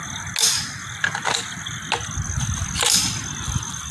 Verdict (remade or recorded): recorded